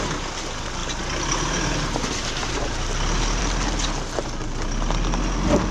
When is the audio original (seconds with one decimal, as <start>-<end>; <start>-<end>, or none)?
0.0-5.7